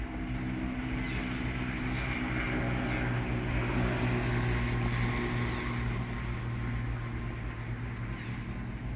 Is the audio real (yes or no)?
yes